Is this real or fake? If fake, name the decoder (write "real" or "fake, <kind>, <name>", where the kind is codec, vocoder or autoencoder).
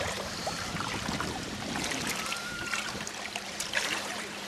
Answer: fake, vocoder, BigVGAN v2